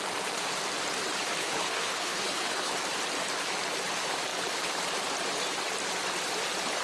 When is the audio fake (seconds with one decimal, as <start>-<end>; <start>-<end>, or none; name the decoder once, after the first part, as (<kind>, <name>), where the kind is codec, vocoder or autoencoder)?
1.4-2.7 (codec, HILCodec)